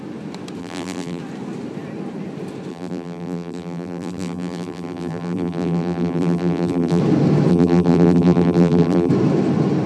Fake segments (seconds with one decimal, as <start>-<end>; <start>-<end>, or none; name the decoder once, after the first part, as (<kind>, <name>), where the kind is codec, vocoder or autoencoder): 0.6-1.2 (vocoder, BigVGAN v2); 2.7-7.0; 7.5-9.1